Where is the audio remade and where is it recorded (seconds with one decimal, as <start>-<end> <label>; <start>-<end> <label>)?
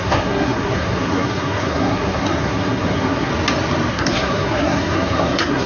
0.0-3.3 remade; 3.3-3.9 recorded; 3.9-5.7 remade